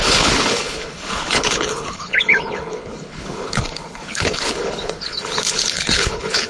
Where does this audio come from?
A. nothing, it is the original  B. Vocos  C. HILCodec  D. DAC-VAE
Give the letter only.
C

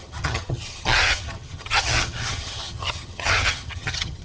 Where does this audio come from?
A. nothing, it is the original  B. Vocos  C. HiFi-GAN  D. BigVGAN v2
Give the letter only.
C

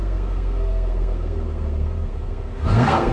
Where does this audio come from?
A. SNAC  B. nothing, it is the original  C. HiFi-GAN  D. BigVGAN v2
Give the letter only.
A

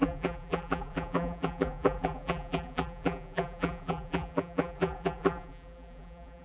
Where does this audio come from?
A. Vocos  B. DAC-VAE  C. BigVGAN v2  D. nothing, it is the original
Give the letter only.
C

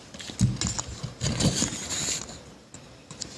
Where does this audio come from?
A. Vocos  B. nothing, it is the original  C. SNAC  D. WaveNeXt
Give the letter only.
B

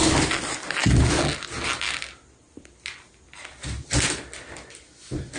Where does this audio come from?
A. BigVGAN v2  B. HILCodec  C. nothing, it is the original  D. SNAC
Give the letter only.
C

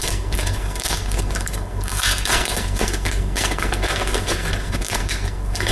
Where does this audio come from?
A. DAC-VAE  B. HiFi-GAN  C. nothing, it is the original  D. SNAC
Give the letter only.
D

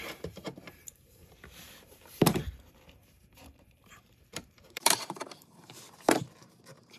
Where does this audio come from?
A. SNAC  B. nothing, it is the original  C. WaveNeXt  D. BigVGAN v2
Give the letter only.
D